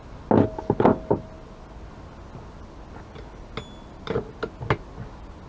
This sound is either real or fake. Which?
real